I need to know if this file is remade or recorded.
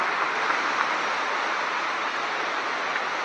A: recorded